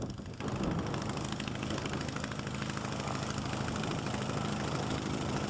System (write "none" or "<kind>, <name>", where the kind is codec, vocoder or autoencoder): none